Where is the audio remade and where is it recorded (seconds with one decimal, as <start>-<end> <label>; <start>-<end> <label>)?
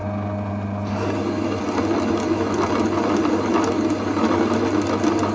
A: 0.0-5.3 recorded